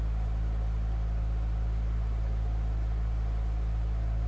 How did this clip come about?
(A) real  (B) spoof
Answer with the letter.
A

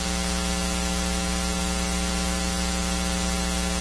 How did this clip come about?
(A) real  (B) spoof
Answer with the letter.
A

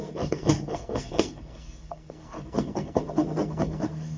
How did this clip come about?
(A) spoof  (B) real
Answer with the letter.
A